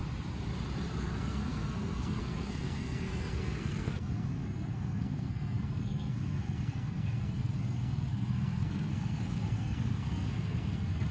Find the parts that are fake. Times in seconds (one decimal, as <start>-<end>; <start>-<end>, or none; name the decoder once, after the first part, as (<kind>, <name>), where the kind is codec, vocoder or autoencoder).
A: 1.0-11.1 (codec, SNAC)